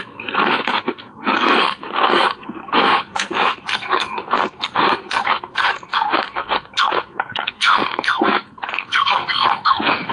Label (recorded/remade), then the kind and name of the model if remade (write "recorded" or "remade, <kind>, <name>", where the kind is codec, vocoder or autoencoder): remade, codec, SNAC